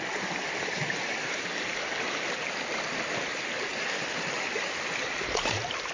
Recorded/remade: recorded